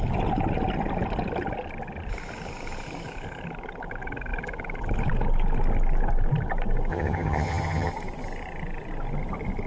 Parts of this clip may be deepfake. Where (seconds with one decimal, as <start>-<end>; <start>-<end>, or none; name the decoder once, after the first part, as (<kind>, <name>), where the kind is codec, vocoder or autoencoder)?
6.9-7.9 (vocoder, HiFi-GAN)